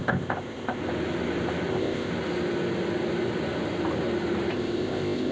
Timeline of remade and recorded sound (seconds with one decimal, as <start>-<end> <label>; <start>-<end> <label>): 0.0-0.8 remade; 0.8-1.7 recorded; 1.7-2.1 remade; 2.1-4.5 recorded; 4.5-5.3 remade